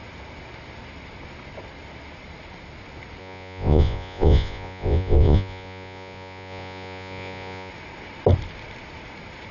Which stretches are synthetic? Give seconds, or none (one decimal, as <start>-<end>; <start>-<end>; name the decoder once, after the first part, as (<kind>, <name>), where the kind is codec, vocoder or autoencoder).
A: 3.2-7.7 (vocoder, Vocos)